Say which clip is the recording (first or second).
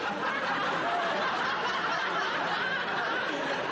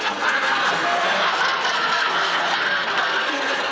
first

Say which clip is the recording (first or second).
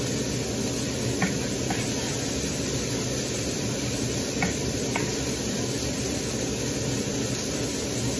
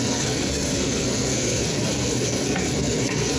first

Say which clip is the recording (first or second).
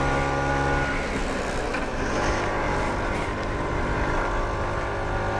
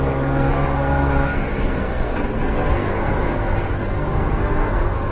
first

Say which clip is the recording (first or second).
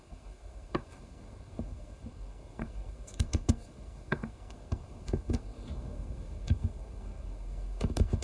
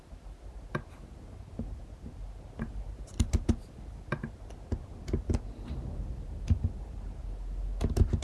second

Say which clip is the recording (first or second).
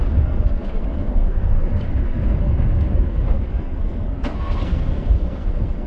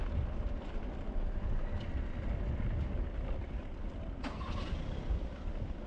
second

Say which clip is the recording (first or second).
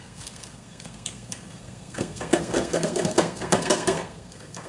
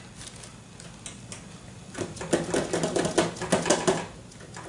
second